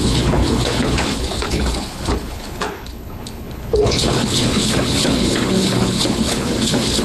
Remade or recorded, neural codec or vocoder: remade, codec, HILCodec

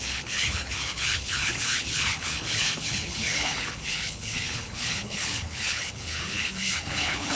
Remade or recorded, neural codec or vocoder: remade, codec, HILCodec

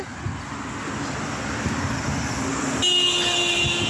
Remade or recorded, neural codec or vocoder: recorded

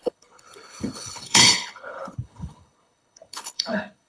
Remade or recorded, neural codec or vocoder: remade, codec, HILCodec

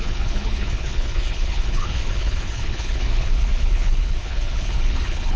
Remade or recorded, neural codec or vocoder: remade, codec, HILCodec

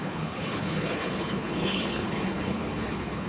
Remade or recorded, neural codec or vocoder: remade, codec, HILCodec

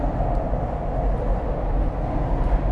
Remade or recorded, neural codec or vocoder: recorded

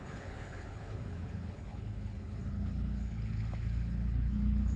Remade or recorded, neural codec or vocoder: remade, codec, HILCodec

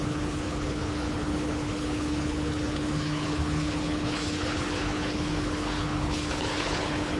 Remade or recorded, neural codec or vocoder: remade, codec, HILCodec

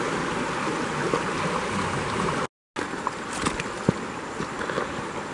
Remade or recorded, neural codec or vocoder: recorded